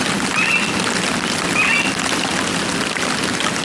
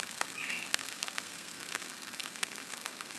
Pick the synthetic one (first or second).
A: second